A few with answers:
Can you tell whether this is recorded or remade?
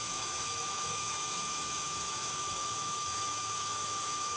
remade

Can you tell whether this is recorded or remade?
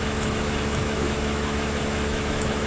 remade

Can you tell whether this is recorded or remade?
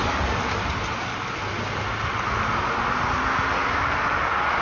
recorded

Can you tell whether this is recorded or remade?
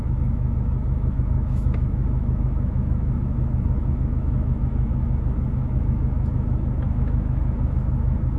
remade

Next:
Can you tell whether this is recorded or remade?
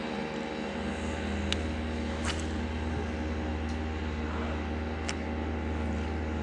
recorded